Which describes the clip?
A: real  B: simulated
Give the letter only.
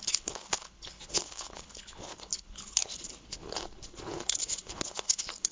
B